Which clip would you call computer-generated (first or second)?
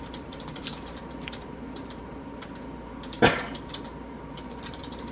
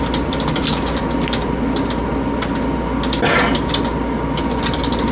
first